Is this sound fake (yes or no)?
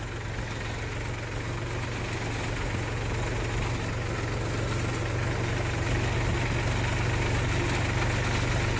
no